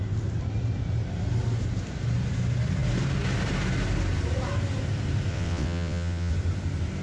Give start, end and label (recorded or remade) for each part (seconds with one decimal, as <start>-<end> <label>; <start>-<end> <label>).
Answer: 0.0-5.3 recorded; 5.3-6.3 remade; 6.3-7.0 recorded